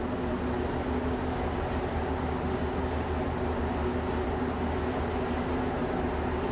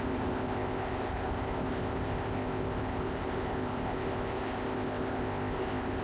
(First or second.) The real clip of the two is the first